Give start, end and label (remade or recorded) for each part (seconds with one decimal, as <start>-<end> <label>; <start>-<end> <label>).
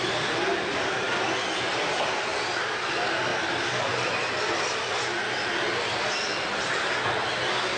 0.0-7.8 recorded